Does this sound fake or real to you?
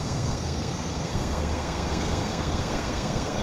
fake